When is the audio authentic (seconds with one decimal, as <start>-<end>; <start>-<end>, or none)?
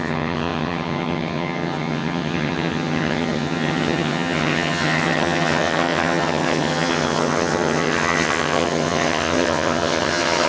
none